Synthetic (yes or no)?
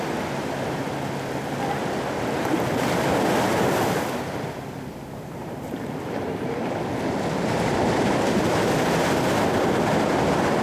no